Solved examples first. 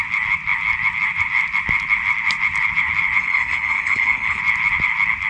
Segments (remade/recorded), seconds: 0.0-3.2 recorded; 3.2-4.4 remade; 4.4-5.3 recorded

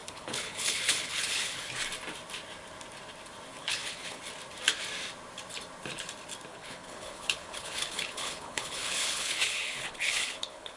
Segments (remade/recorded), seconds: 0.0-1.7 remade; 1.7-3.6 recorded; 3.6-4.2 remade; 4.2-6.5 recorded; 6.5-10.8 remade

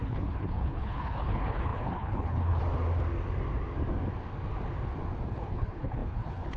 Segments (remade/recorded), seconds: 0.0-2.6 remade; 2.6-5.3 recorded; 5.3-6.6 remade

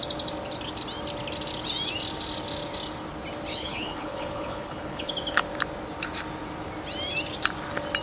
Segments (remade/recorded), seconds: 0.0-3.5 recorded; 3.5-5.1 remade; 5.1-8.0 recorded

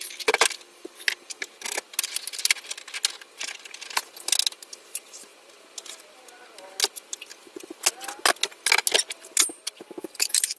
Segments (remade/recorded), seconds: 0.0-10.6 recorded

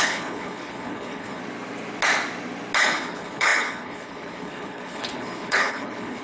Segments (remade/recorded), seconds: 0.0-1.4 remade; 1.4-2.8 recorded; 2.8-6.2 remade